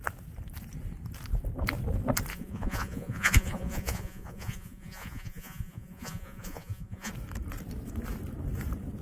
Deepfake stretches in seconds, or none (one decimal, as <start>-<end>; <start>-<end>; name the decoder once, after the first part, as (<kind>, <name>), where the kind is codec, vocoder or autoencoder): 2.3-7.1 (vocoder, Vocos)